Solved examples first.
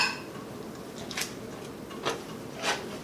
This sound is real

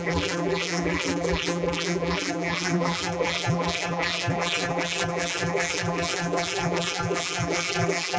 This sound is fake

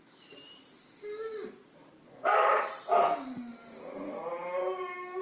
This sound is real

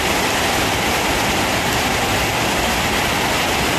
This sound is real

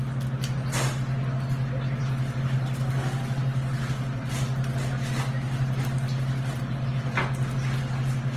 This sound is real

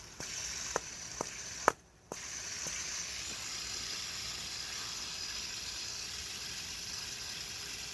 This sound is fake